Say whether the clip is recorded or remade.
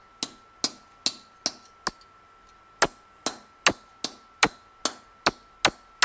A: recorded